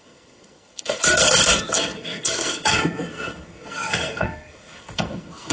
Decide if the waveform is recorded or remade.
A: remade